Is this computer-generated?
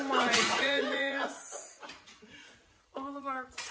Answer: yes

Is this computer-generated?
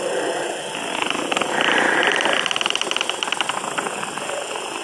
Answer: no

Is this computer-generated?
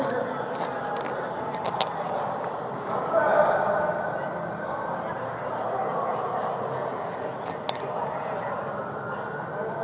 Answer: no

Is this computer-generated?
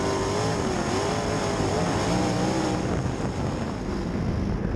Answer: no